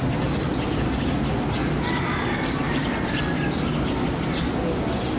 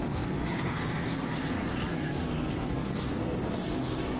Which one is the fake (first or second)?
second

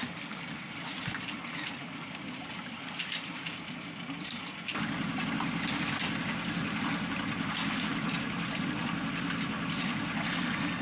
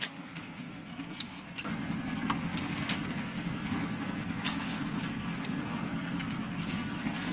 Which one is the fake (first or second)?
second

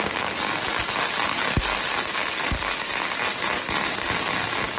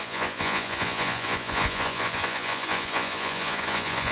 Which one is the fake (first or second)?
second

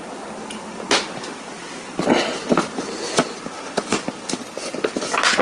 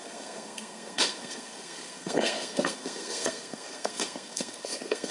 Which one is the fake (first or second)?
second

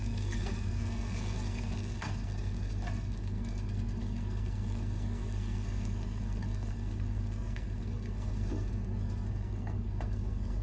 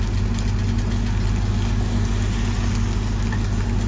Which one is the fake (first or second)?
first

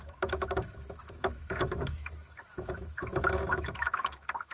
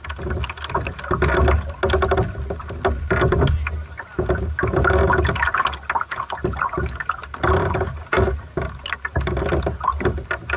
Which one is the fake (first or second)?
first